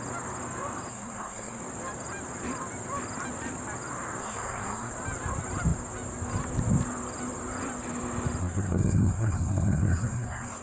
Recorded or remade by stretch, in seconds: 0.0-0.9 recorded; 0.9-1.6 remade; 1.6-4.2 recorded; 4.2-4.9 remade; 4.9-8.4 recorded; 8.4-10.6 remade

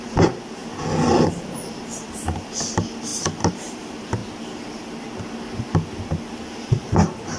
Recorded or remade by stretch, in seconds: 0.0-0.6 remade; 0.6-1.3 recorded; 1.3-4.2 remade; 4.2-6.6 recorded; 6.6-7.4 remade